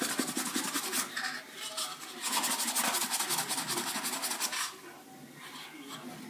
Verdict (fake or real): real